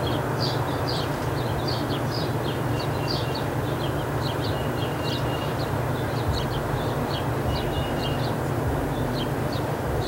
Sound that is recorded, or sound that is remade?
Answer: remade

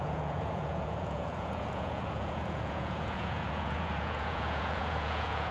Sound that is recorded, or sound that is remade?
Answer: remade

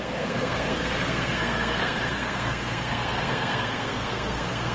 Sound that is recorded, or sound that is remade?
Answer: remade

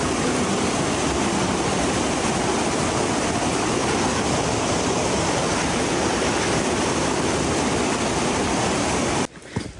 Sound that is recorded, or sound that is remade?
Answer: recorded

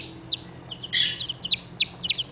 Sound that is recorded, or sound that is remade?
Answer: recorded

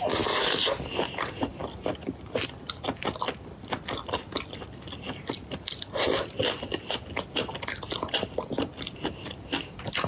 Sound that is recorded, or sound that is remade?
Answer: recorded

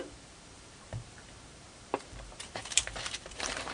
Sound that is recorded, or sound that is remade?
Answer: remade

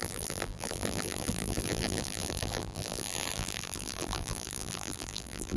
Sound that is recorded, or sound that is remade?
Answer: remade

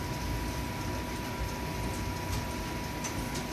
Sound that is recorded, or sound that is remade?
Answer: recorded